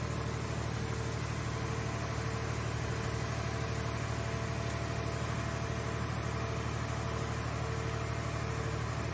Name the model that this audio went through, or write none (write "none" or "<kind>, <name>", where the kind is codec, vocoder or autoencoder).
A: none